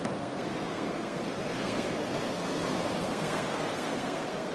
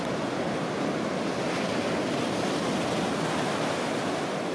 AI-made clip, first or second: first